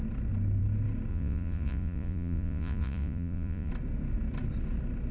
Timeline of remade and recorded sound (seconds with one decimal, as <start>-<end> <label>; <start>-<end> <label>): 0.0-1.1 recorded; 1.1-3.7 remade; 3.7-5.1 recorded